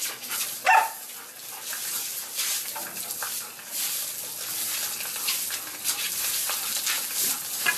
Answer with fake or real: real